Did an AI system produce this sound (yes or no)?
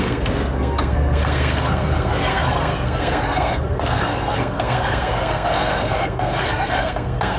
yes